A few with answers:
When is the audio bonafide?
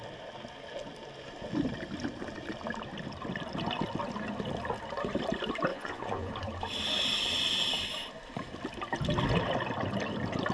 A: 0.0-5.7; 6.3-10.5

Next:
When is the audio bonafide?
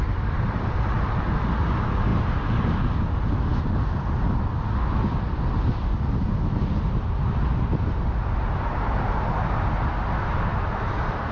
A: 0.0-11.3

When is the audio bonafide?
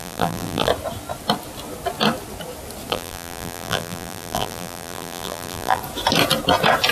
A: 0.7-2.9; 5.8-6.9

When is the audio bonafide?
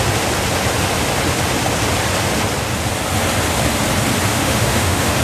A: 0.0-4.3